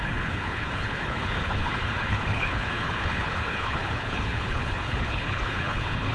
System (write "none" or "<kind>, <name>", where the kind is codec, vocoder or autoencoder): codec, HILCodec